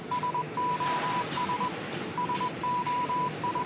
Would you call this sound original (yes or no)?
no